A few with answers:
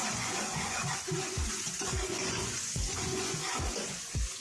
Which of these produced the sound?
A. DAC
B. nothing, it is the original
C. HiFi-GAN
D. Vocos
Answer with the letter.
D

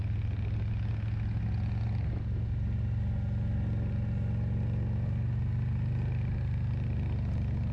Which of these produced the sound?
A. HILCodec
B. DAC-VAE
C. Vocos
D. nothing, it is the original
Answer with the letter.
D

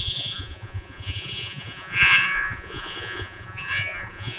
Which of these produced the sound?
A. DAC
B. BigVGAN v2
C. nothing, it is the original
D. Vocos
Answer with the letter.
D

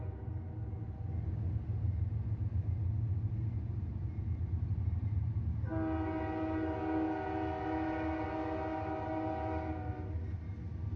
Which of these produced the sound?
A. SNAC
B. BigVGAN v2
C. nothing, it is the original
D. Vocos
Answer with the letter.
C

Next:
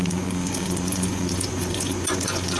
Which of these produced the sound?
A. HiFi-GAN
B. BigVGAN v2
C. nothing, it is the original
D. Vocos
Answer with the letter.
D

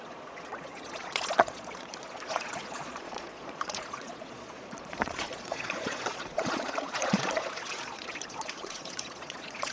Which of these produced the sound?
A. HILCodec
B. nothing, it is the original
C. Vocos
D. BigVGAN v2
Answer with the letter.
C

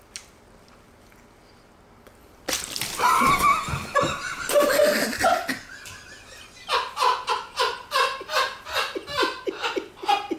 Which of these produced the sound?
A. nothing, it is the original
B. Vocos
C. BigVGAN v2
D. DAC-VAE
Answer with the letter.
A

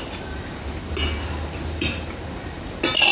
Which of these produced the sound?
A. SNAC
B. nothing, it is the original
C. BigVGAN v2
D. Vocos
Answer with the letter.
B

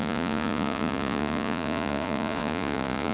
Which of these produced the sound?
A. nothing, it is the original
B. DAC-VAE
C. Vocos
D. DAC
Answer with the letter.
C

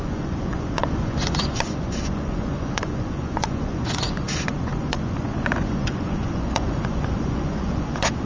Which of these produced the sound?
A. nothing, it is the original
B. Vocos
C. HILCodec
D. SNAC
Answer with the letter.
B